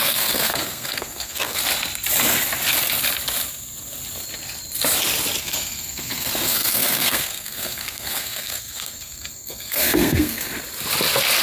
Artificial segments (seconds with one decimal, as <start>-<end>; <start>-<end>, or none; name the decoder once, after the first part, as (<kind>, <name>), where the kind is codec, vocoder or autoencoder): 0.0-1.6 (codec, SNAC); 5.4-10.5